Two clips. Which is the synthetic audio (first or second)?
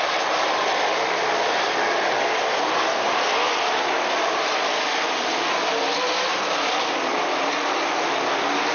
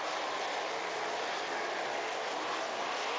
first